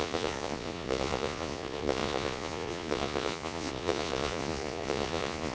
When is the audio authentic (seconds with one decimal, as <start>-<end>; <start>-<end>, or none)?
none

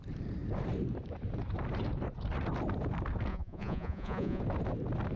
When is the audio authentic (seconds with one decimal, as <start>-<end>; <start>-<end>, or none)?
0.0-3.3; 4.4-5.2